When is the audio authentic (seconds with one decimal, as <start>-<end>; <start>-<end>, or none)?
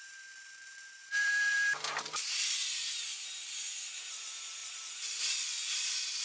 2.9-4.6